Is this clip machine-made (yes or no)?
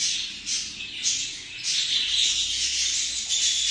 no